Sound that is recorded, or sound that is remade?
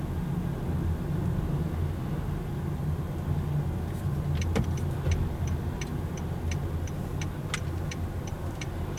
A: recorded